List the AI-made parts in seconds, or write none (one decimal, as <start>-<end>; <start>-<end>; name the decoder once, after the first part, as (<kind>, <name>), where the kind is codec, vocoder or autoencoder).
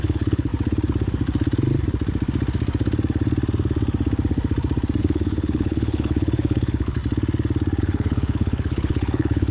0.0-0.5 (codec, HILCodec); 5.0-7.0; 7.8-9.5